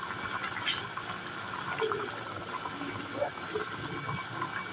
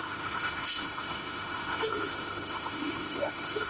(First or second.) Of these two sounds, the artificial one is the second